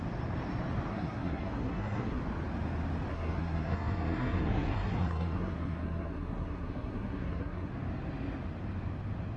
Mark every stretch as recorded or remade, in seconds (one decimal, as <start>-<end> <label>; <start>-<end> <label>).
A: 0.0-0.9 recorded; 0.9-2.2 remade; 2.2-3.1 recorded; 3.1-7.7 remade; 7.7-9.4 recorded